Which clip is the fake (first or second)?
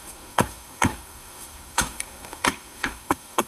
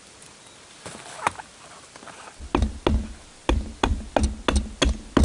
first